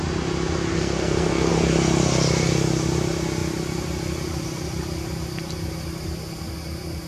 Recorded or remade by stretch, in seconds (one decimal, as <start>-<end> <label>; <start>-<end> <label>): 0.0-0.7 recorded; 0.7-1.5 remade; 1.5-7.1 recorded